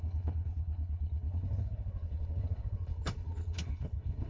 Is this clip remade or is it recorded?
remade